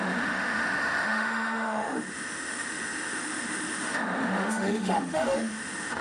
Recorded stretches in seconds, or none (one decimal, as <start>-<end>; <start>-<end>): none